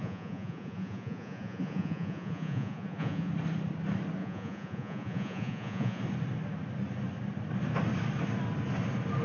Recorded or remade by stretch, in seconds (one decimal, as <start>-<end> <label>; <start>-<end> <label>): 0.0-3.3 remade; 3.3-4.2 recorded; 4.2-6.0 remade; 6.0-9.2 recorded